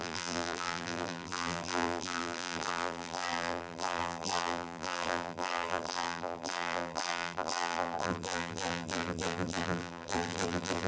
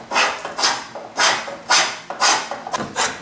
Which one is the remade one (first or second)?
first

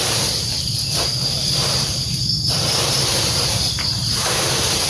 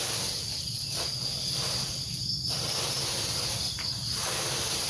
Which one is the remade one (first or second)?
first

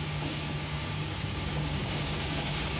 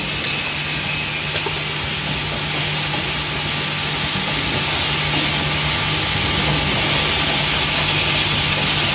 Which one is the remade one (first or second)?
first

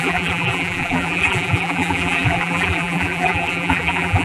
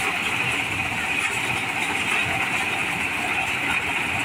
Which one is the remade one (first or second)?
first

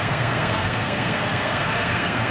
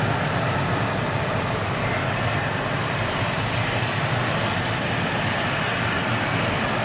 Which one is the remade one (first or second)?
first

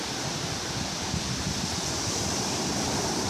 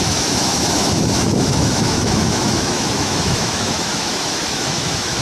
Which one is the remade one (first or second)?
second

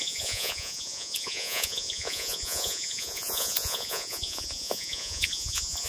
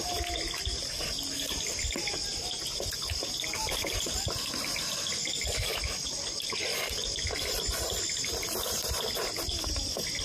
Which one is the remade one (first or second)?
first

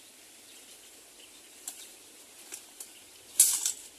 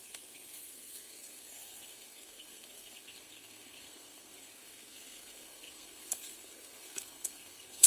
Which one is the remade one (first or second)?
second